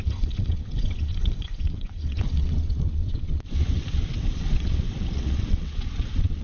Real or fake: fake